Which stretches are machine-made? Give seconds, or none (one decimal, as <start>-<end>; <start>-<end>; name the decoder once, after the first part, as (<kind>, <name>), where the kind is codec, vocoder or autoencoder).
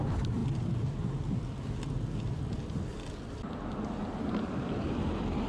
none